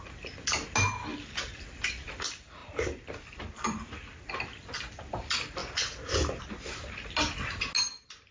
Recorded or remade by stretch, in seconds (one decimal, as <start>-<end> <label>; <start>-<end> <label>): 0.0-1.1 recorded; 1.1-2.2 remade; 2.2-2.6 recorded; 2.6-4.3 remade; 4.3-5.6 recorded; 5.6-6.4 remade; 6.4-8.3 recorded